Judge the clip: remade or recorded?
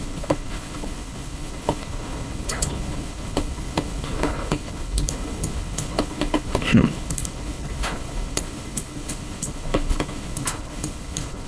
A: remade